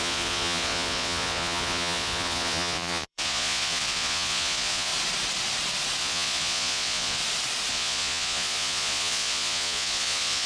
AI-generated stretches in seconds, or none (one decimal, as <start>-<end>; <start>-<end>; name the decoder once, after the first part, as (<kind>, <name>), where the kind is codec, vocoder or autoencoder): 0.0-4.9 (vocoder, Vocos); 6.0-7.2; 7.7-10.5